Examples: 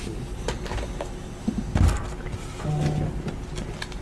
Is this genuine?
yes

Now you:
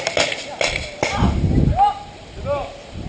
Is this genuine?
yes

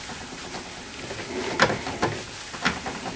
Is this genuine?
yes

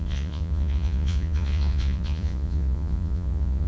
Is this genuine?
no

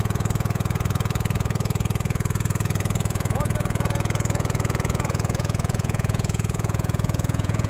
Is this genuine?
no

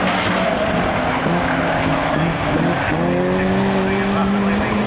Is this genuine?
yes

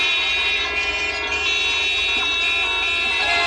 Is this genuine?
yes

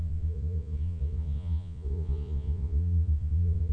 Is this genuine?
no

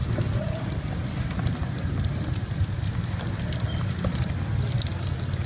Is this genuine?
yes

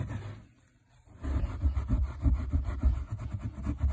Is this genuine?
yes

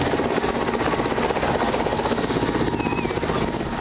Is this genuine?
yes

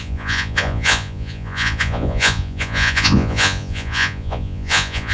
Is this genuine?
no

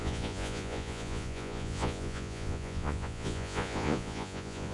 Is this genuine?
no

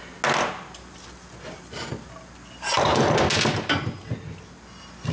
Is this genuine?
yes